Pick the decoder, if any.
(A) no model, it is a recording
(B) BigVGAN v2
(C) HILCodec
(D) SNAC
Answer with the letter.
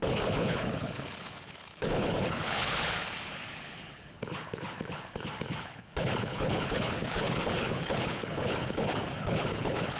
C